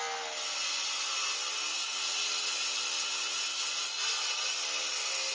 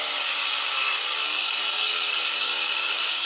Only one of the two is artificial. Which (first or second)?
second